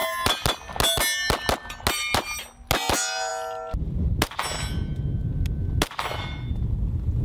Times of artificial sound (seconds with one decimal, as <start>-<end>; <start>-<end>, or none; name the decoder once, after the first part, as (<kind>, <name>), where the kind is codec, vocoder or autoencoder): none